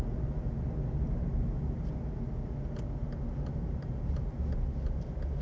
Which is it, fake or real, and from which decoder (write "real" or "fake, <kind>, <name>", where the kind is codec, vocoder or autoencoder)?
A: real